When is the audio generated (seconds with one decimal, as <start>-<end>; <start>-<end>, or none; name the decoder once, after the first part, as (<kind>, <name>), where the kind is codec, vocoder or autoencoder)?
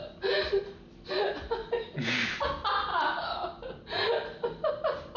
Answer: none